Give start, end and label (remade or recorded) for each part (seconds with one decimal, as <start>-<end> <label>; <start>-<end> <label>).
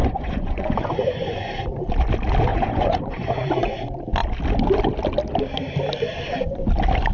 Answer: 0.0-1.5 remade; 1.5-2.5 recorded; 2.5-3.8 remade; 3.8-7.1 recorded